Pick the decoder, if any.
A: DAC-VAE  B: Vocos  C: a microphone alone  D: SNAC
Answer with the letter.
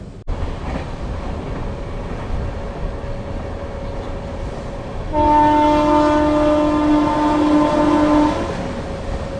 C